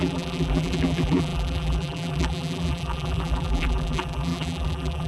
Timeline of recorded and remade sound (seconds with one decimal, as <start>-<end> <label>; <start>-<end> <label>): 0.0-5.1 remade